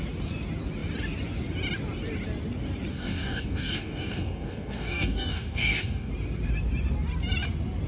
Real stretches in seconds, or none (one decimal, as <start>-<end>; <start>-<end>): 0.0-2.9; 6.1-7.9